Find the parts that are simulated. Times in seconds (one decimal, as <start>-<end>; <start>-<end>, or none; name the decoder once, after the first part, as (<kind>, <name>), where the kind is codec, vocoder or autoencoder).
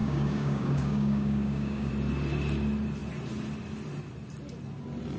0.0-1.9 (codec, DAC)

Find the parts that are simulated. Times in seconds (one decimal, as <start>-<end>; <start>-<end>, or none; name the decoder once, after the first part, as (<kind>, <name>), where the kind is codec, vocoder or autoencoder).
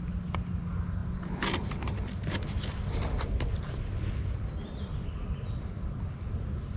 none